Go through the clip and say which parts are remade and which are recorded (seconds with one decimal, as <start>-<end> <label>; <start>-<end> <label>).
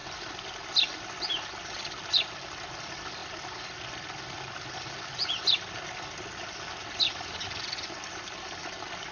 0.0-9.1 recorded